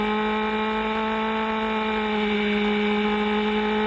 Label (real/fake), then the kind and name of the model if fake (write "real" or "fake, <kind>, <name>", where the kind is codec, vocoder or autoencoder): real